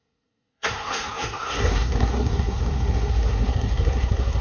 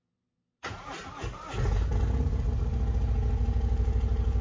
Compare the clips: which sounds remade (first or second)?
first